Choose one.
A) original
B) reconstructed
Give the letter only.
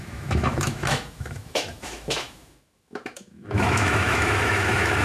B